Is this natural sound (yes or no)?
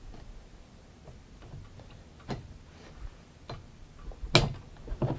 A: yes